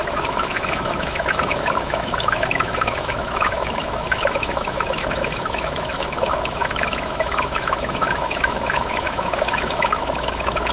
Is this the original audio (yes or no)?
no